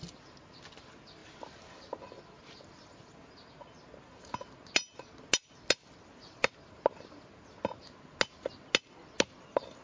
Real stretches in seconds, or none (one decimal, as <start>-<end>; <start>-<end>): 0.0-9.8